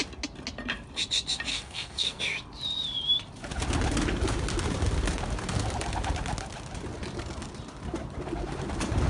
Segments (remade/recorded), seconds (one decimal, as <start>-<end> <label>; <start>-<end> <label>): 0.0-1.5 recorded; 1.5-2.2 remade; 2.2-9.1 recorded